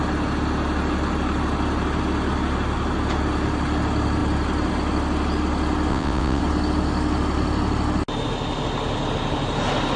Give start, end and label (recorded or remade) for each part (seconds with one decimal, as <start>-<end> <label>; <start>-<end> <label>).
0.0-5.9 recorded; 5.9-6.4 remade; 6.4-10.0 recorded